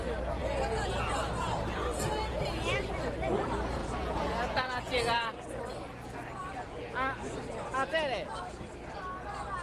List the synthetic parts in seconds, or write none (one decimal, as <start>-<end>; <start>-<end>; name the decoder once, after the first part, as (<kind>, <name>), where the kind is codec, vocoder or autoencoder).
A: 3.8-5.6 (vocoder, Vocos)